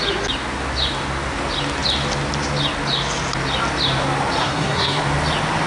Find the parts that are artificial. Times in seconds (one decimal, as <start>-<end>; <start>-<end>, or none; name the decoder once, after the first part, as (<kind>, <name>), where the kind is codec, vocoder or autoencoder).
4.4-5.0 (codec, SNAC)